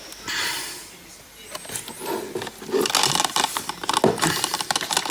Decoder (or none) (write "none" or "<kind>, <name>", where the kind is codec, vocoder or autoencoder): none